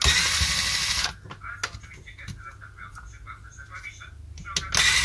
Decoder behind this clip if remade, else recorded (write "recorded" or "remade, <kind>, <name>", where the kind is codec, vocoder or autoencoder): recorded